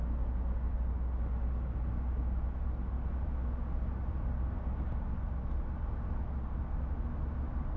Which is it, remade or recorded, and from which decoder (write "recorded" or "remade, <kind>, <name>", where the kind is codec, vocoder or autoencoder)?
recorded